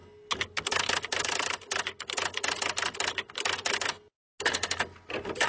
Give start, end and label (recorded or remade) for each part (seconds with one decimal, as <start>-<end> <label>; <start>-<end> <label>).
0.0-5.5 recorded